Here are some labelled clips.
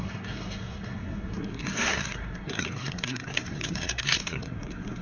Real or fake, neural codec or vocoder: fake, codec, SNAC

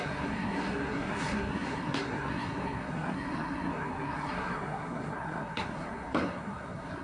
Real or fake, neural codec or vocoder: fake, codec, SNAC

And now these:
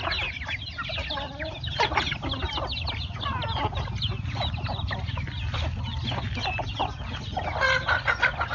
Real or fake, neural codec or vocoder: real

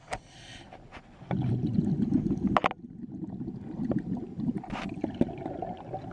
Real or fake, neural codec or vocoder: real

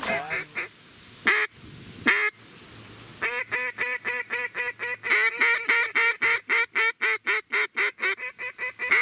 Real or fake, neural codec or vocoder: real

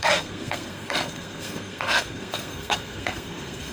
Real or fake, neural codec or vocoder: fake, codec, SNAC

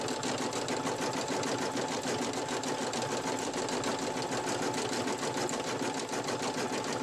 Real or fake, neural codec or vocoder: real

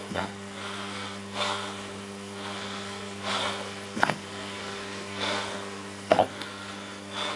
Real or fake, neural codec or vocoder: fake, codec, SNAC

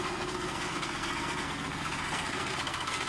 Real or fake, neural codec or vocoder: fake, codec, SNAC